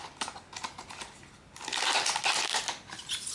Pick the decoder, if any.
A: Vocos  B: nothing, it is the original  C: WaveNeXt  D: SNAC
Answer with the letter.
B